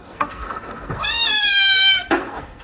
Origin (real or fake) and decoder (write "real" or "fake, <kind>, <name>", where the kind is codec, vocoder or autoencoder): fake, codec, SNAC